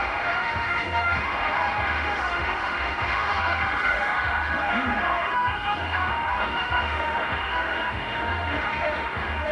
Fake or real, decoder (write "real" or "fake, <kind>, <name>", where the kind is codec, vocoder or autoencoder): fake, autoencoder, DAC-VAE